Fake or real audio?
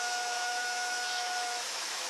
fake